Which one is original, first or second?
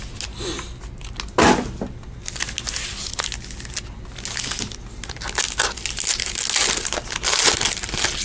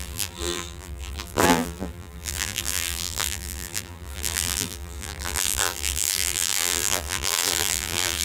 first